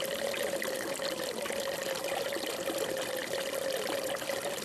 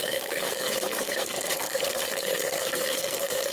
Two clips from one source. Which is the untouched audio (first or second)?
first